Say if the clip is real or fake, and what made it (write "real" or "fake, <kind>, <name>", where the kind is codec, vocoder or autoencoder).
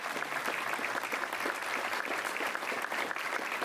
fake, vocoder, BigVGAN v2